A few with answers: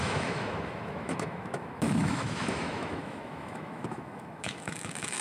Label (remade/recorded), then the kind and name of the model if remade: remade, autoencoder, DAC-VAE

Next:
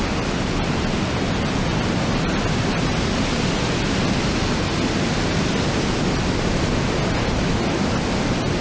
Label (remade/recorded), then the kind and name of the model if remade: recorded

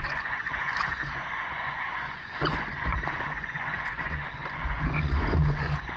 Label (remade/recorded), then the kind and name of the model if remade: remade, vocoder, Vocos